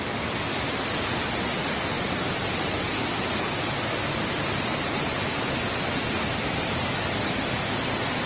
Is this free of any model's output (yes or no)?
yes